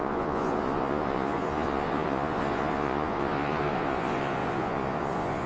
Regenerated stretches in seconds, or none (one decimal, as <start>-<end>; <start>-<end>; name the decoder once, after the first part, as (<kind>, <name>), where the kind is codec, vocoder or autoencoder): 0.0-5.5 (vocoder, Vocos)